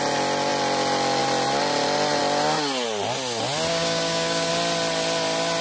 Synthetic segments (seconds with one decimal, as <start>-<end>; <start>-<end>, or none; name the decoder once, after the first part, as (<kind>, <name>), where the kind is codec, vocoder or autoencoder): 3.7-4.5 (codec, DAC)